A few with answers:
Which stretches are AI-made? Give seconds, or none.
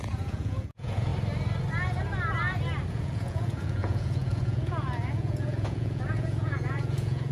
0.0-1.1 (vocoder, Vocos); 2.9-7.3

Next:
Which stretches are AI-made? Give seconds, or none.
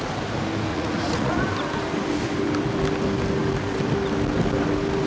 0.7-1.4 (vocoder, Vocos)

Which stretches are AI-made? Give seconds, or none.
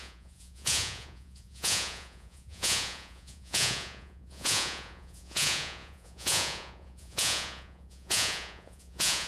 0.0-9.3 (vocoder, Vocos)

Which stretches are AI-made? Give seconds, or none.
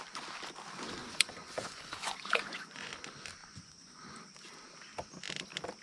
1.0-2.9 (vocoder, Vocos); 3.4-4.2